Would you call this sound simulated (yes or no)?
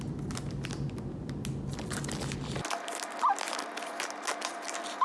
no